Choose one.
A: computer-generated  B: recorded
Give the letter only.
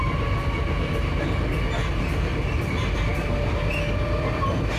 B